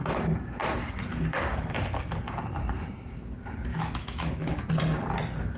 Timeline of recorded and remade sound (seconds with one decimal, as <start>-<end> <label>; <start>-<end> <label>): 0.0-3.7 recorded; 3.7-4.6 remade; 4.6-5.6 recorded